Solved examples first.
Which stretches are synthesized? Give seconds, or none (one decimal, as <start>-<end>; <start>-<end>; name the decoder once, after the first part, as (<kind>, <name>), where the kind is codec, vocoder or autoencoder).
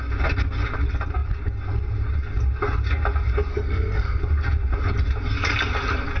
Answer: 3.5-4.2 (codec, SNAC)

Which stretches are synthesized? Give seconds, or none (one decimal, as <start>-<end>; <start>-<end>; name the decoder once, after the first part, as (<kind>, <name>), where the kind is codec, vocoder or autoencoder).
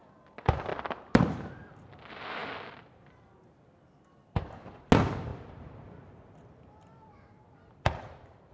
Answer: 0.7-1.5 (vocoder, BigVGAN v2); 5.3-8.5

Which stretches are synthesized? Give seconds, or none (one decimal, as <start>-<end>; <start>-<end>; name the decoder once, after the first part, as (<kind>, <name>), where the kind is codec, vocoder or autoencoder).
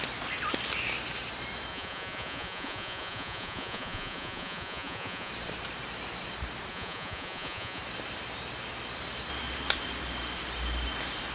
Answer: 1.7-5.3 (vocoder, Vocos); 6.7-7.8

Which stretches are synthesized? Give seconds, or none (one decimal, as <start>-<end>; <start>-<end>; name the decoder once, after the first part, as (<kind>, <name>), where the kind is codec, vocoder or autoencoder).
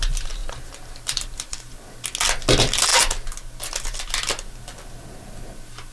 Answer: 0.4-1.8 (vocoder, BigVGAN v2)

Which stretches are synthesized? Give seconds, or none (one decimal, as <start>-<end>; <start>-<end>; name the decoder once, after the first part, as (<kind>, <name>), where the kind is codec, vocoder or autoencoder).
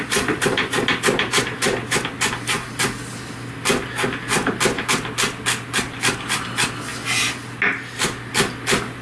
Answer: none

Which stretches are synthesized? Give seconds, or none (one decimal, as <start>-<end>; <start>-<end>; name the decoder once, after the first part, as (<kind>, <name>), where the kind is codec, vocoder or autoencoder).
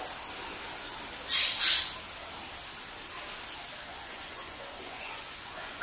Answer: 3.9-5.8 (vocoder, Vocos)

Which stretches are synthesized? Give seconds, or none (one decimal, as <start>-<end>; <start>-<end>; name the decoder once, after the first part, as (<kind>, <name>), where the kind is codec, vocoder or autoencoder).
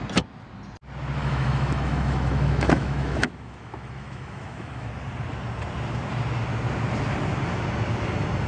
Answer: 1.2-4.9 (autoencoder, DAC-VAE)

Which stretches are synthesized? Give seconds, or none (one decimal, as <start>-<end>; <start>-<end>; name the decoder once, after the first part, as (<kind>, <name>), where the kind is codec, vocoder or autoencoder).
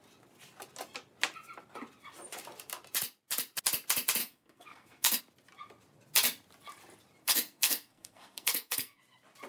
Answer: 4.2-5.2 (codec, SNAC); 7.2-9.0